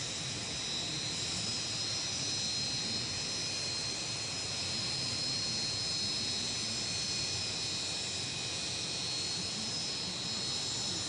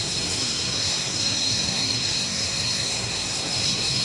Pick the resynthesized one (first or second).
second